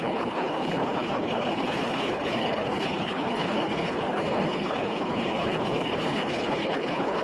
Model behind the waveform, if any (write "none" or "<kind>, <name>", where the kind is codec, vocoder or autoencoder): codec, HILCodec